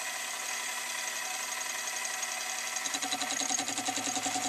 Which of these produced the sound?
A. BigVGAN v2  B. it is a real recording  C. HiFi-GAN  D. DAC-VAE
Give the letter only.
B